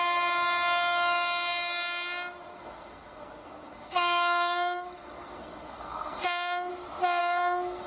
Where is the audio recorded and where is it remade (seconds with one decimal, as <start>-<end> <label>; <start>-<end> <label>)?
0.0-2.5 recorded; 2.5-6.7 remade; 6.7-7.2 recorded; 7.2-7.9 remade